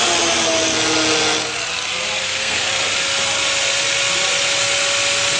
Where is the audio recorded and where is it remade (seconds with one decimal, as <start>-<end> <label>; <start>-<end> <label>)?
0.0-2.2 recorded; 2.2-2.7 remade; 2.7-5.4 recorded